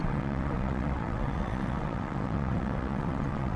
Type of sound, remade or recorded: remade